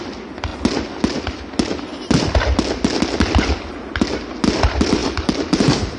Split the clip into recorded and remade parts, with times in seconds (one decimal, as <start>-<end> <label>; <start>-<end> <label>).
0.0-5.0 recorded; 5.0-6.0 remade

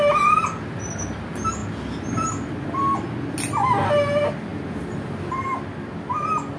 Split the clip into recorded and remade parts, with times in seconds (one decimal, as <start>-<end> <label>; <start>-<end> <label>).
0.0-6.6 recorded

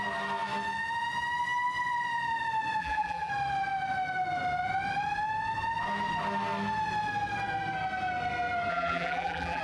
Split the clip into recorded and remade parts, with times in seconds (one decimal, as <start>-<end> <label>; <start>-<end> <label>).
0.0-2.8 recorded; 2.8-3.3 remade; 3.3-8.7 recorded; 8.7-9.6 remade

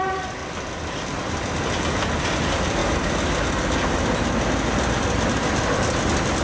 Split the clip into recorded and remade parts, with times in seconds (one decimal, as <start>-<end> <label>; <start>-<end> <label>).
0.0-0.4 remade; 0.4-1.1 recorded; 1.1-2.8 remade; 2.8-4.8 recorded; 4.8-6.4 remade

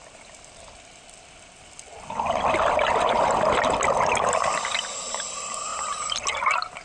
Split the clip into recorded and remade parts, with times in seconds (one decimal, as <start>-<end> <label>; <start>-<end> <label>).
0.0-6.8 recorded

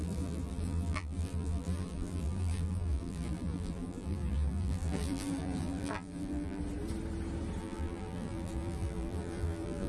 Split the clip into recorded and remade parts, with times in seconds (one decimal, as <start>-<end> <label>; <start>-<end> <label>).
0.0-6.6 remade; 6.6-7.6 recorded; 7.6-9.9 remade

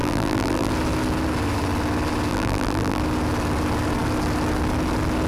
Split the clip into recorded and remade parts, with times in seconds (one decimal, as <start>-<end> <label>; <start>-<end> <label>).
0.0-0.7 remade; 0.7-2.3 recorded; 2.3-3.0 remade; 3.0-5.3 recorded

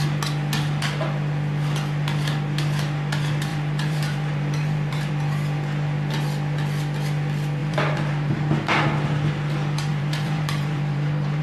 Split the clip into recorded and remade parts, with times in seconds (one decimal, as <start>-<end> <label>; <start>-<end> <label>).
0.0-3.5 recorded; 3.5-5.1 remade; 5.1-7.6 recorded; 7.6-8.3 remade; 8.3-9.9 recorded; 9.9-11.4 remade